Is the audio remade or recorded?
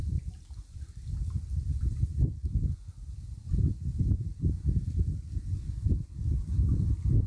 remade